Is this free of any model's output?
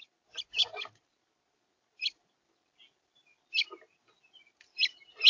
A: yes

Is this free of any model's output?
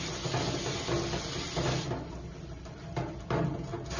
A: yes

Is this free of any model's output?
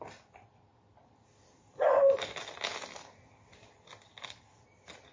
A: yes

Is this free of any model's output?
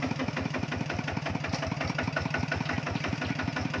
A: yes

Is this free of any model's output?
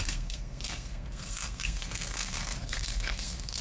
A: no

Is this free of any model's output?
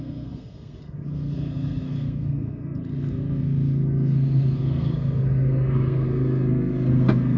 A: no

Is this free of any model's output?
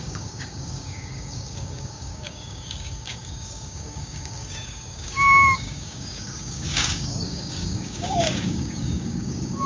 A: no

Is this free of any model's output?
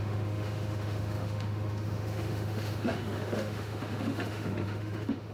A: no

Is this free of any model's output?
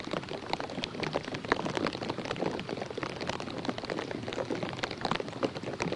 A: yes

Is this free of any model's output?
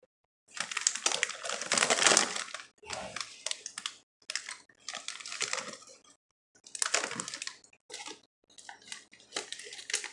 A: yes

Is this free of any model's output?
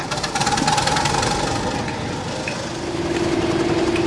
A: yes